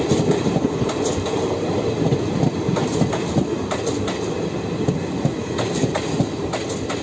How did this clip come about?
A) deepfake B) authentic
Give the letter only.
B